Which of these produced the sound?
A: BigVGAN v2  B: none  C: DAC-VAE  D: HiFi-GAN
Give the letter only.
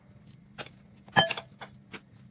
B